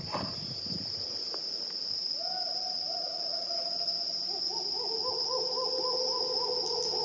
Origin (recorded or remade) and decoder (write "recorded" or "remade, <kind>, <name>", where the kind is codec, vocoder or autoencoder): recorded